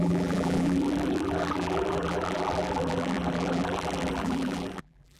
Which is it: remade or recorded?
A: remade